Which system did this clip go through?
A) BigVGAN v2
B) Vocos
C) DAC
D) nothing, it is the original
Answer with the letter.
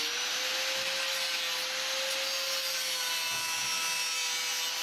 D